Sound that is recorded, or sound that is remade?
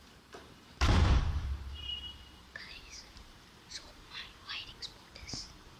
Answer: remade